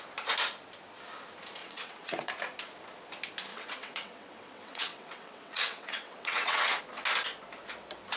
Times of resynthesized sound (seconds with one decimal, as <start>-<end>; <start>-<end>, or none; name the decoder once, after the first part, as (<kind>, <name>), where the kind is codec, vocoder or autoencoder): 1.6-2.3 (vocoder, WaveNeXt); 3.5-6.8